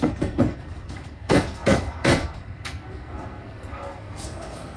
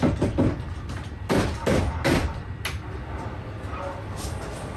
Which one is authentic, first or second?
second